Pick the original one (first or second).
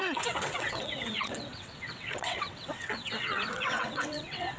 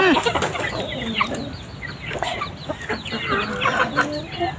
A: second